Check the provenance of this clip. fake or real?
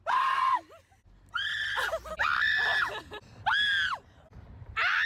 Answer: real